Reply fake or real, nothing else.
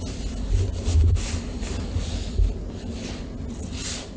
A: real